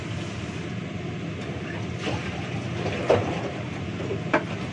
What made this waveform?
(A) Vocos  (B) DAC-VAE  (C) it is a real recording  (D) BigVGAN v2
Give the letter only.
C